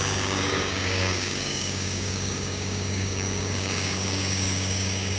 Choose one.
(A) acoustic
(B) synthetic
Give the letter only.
B